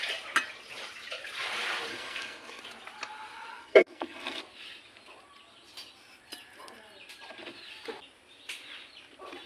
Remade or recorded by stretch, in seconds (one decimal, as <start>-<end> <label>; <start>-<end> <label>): 0.0-1.9 recorded; 1.9-2.6 remade; 2.6-3.5 recorded; 3.5-4.4 remade; 4.4-9.5 recorded